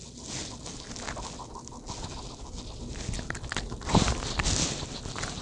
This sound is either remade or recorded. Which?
recorded